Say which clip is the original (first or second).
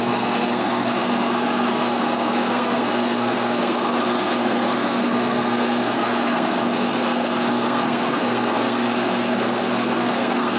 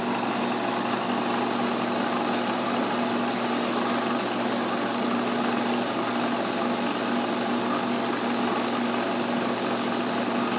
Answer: second